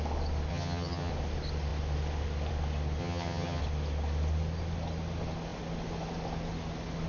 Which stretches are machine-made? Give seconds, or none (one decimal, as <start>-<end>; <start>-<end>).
0.5-1.1; 3.0-3.6